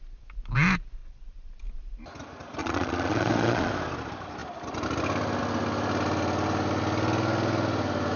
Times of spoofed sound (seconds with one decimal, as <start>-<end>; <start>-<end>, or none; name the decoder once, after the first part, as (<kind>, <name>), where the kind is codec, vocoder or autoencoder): 1.0-1.6 (vocoder, Vocos); 2.6-3.7